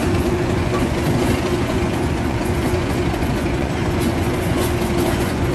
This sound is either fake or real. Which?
fake